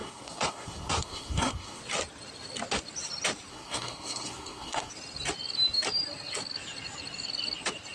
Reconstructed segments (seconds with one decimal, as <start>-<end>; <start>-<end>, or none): 0.0-1.8; 3.5-4.9